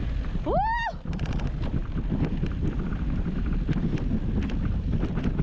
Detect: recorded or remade recorded